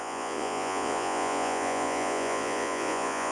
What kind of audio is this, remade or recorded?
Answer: remade